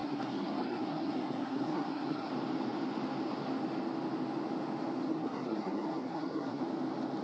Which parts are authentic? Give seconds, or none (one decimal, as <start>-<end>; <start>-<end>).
2.3-5.1; 6.6-7.2